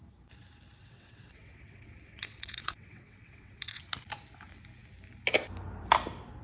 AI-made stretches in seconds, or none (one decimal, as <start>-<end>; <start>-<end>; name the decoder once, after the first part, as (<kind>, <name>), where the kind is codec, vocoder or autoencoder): 0.8-3.8 (vocoder, WaveNeXt)